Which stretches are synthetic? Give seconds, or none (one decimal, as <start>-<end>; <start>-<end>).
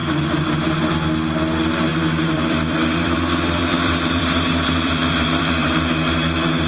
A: 1.9-5.9